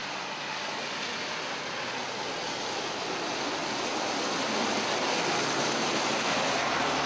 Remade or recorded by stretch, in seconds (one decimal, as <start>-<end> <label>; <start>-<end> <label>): 0.0-3.6 recorded; 3.6-5.3 remade; 5.3-7.1 recorded